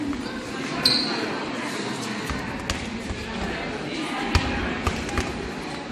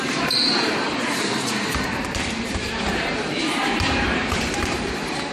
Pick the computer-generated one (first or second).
second